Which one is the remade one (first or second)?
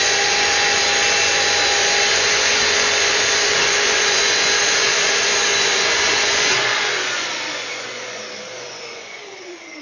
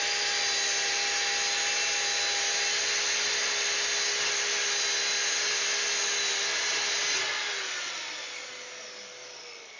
first